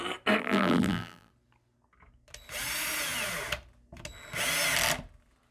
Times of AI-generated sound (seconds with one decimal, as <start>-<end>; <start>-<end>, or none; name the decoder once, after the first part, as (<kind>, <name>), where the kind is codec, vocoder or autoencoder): 0.4-1.3 (vocoder, BigVGAN v2)